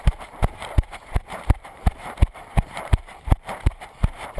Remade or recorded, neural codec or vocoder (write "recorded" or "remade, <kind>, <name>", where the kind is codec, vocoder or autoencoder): remade, vocoder, BigVGAN v2